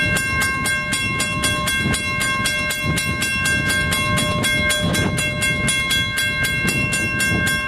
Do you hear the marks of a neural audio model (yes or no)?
no